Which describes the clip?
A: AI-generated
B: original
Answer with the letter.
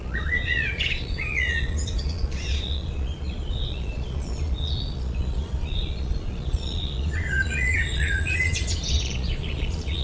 A